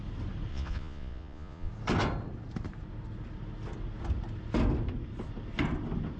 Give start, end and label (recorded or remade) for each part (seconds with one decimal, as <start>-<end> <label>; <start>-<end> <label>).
0.0-0.5 recorded; 0.5-1.7 remade; 1.7-6.2 recorded